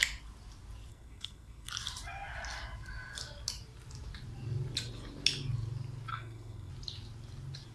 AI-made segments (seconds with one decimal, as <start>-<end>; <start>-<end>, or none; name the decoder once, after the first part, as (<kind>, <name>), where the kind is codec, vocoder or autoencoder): 0.9-1.7 (codec, SNAC); 6.1-6.7